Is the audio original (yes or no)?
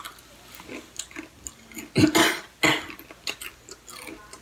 yes